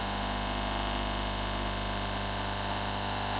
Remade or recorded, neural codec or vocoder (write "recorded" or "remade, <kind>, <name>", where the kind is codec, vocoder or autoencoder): remade, autoencoder, DAC-VAE